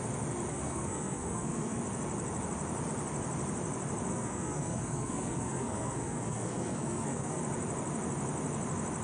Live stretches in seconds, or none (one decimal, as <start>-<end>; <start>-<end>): 0.0-0.5; 1.8-4.1; 7.4-9.0